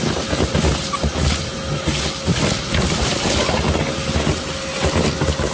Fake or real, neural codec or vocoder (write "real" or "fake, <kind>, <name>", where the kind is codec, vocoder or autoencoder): real